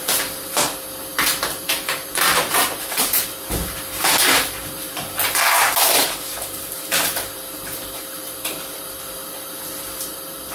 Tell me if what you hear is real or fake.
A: fake